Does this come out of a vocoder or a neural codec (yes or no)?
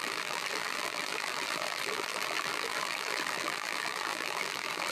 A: yes